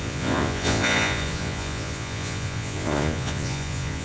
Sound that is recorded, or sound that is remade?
remade